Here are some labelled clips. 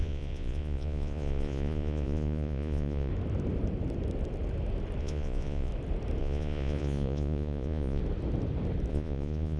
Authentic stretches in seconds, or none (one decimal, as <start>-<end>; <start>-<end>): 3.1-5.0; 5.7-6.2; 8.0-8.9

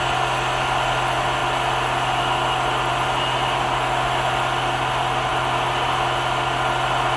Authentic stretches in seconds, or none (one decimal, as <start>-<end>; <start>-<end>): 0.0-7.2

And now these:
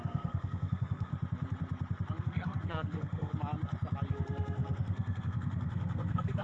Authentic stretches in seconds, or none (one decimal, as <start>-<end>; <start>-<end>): 1.1-2.2; 3.3-4.1

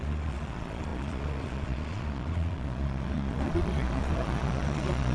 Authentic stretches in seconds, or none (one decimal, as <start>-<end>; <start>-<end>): none